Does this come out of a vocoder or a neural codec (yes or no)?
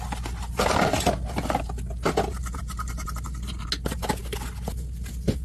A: no